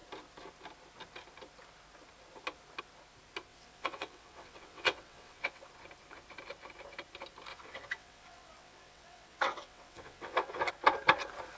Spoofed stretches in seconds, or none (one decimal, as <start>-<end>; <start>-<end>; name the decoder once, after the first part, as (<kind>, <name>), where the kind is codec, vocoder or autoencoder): 3.5-5.7 (vocoder, WaveNeXt); 7.5-10.7